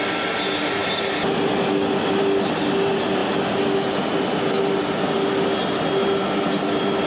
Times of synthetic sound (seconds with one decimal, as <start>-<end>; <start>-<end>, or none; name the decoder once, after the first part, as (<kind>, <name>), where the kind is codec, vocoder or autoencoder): none